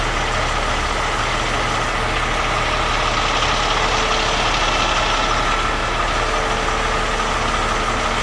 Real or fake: real